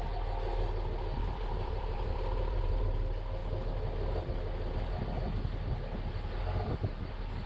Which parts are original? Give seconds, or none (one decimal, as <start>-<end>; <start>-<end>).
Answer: 0.0-1.2; 2.8-7.5